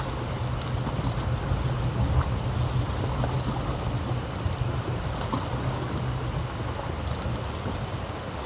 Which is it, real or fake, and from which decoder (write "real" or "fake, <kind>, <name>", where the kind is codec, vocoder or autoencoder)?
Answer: real